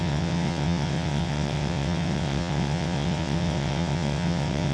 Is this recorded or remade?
remade